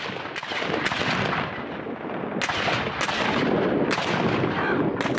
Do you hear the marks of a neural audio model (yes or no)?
no